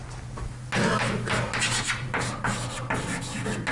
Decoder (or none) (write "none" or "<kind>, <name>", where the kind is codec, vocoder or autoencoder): none